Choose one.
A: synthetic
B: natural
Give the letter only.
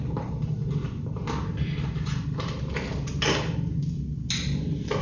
B